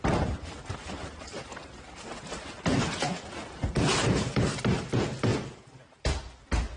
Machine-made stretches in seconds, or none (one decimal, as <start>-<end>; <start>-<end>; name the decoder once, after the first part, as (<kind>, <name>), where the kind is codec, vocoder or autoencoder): none